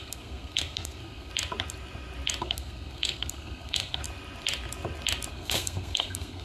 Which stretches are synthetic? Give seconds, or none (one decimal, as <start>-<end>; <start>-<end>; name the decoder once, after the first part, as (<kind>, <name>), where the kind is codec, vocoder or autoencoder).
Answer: 0.0-1.3 (codec, SNAC); 2.4-4.0; 5.3-6.4